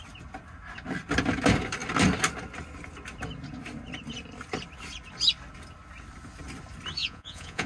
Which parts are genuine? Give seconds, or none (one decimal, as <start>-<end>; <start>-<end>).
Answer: 0.0-7.0